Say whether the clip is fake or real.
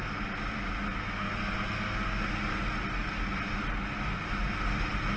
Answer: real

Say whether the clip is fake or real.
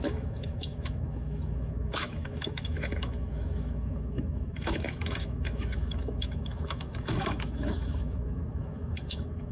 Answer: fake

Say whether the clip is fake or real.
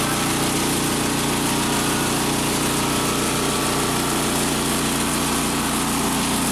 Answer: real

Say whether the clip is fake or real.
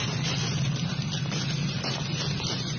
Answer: real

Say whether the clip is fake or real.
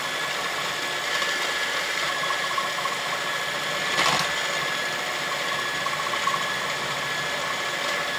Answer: real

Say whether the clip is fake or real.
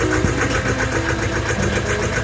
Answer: real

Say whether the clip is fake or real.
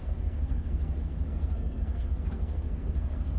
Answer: fake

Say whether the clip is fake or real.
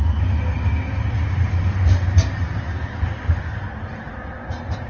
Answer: real